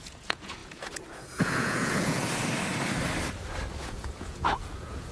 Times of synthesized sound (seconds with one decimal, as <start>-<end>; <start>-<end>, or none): 0.0-2.2; 3.8-5.1